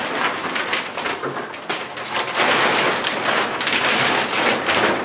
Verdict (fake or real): real